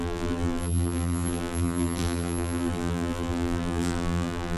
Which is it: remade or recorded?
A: remade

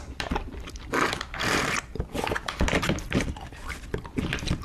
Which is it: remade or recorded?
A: remade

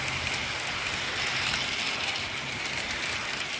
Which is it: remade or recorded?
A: recorded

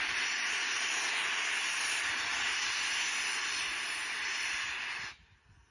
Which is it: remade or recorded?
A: recorded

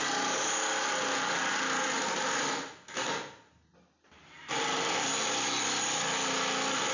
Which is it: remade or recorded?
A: recorded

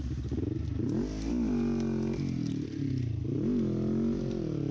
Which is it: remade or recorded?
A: recorded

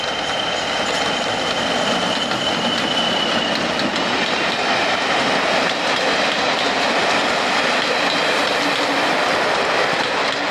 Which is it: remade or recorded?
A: recorded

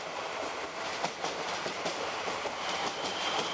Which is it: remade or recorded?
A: remade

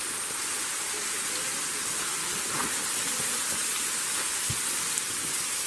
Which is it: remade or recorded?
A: recorded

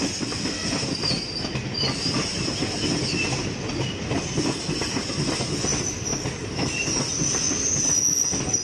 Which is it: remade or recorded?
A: recorded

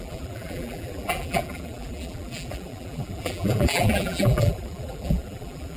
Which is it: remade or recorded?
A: remade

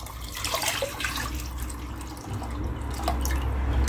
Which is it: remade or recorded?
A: recorded